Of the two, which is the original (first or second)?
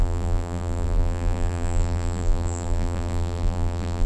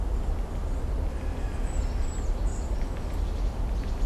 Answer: second